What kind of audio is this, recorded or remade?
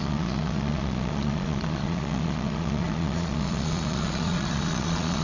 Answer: remade